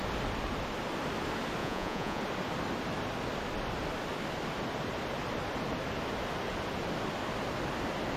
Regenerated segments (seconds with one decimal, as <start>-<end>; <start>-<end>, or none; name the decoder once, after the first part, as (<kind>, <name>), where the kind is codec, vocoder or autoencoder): 1.6-2.2 (vocoder, Vocos)